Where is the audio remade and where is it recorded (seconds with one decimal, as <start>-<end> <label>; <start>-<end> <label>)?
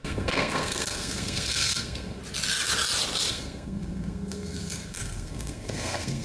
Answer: 0.0-2.2 remade; 2.2-3.3 recorded; 3.3-6.2 remade